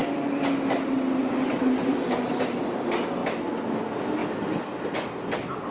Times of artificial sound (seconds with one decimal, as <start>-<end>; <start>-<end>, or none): none